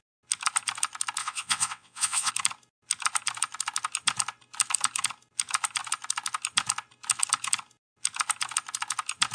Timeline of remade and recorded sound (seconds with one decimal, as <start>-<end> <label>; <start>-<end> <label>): 0.0-1.2 recorded; 1.2-2.3 remade; 2.3-9.3 recorded